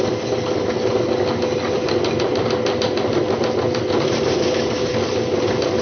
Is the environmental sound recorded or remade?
recorded